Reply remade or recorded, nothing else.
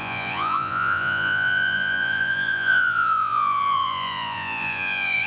remade